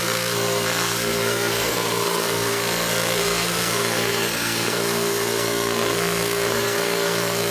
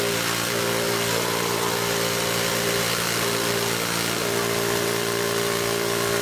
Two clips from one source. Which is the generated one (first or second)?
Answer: first